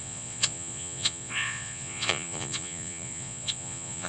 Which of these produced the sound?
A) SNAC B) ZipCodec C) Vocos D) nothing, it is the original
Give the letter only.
C